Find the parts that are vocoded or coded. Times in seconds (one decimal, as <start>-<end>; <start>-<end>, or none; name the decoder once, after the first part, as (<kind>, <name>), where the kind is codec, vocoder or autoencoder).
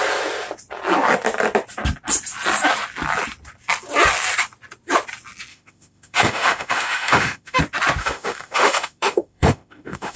5.5-7.6 (autoencoder, DAC-VAE); 8.0-10.2